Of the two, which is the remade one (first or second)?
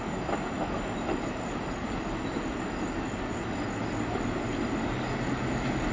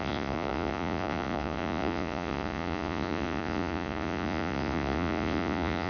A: second